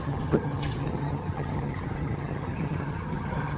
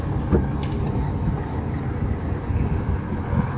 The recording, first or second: second